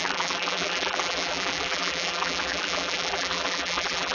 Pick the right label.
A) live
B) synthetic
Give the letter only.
B